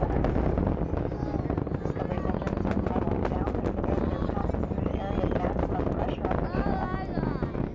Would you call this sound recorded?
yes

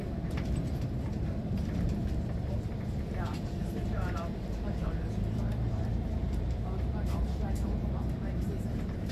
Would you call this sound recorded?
no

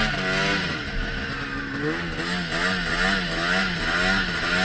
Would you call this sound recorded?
yes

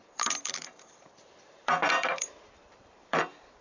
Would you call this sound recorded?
no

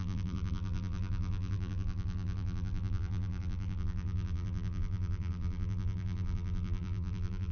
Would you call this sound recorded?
no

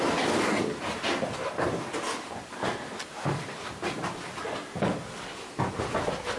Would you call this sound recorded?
yes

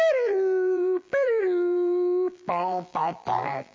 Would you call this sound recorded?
no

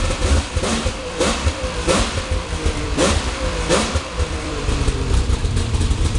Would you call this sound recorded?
no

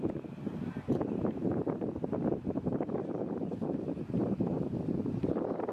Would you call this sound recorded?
no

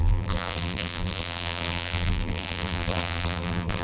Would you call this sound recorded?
no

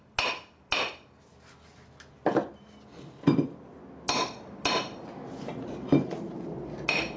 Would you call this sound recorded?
yes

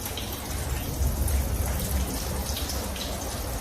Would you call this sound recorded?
yes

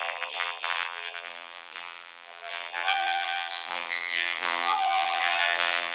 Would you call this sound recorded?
no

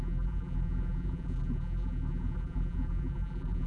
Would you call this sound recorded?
no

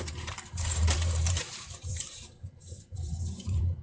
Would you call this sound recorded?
no